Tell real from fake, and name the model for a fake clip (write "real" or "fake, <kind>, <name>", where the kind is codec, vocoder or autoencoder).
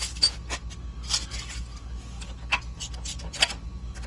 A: real